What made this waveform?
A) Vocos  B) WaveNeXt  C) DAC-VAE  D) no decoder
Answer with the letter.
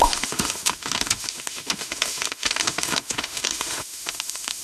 C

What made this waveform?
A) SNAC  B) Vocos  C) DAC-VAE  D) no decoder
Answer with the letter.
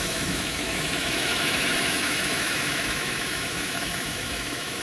C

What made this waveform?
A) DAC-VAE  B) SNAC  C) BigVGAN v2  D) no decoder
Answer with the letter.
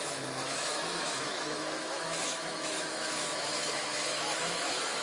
A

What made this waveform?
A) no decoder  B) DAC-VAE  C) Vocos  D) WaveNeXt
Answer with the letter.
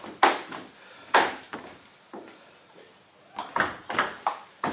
A